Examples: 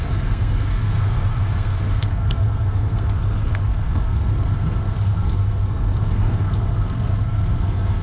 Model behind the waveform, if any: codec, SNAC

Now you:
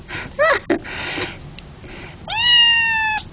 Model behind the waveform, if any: none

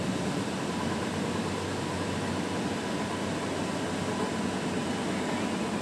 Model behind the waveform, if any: none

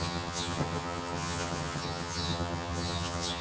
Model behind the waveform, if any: vocoder, HiFi-GAN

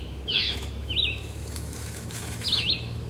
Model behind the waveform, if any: autoencoder, DAC-VAE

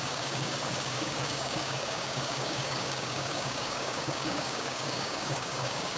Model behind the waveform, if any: codec, DAC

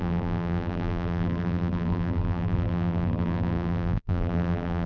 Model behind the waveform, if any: vocoder, BigVGAN v2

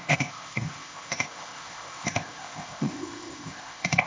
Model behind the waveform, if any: codec, ZipCodec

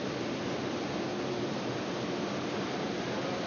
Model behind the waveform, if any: none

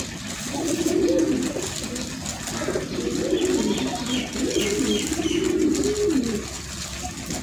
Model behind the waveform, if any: none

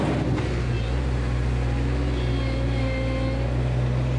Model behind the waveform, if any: none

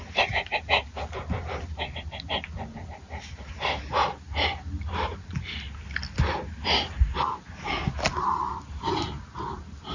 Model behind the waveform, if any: none